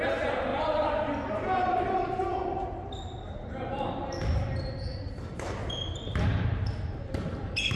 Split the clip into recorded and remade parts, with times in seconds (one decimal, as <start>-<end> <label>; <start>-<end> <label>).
0.0-5.6 remade; 5.6-6.1 recorded; 6.1-7.8 remade